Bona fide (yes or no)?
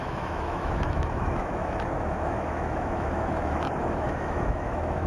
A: no